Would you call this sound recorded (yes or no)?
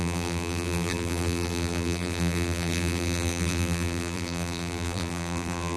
no